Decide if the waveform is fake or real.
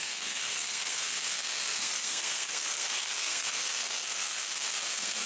fake